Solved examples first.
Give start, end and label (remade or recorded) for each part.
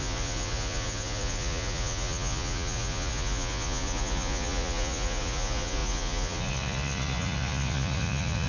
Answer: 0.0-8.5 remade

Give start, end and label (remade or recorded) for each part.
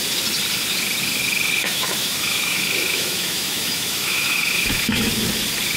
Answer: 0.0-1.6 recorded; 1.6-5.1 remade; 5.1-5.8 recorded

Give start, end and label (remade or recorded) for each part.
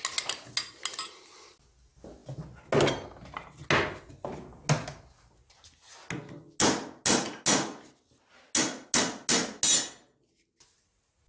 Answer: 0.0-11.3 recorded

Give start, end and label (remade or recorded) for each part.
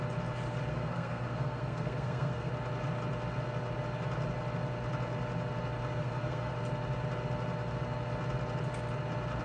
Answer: 0.0-0.7 recorded; 0.7-2.5 remade; 2.5-6.0 recorded; 6.0-6.5 remade; 6.5-9.4 recorded